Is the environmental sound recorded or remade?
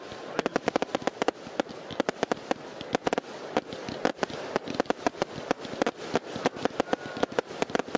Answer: recorded